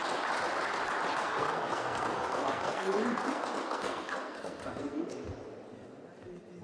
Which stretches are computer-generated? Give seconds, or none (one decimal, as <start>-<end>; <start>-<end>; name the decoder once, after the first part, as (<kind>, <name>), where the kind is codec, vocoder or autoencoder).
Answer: 1.1-5.1 (codec, SNAC)